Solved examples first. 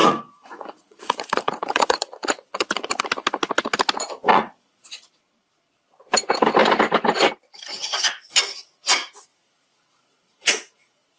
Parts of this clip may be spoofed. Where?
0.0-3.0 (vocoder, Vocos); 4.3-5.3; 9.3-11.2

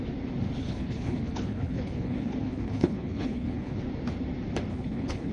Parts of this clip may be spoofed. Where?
0.6-3.8 (codec, HILCodec); 4.7-5.3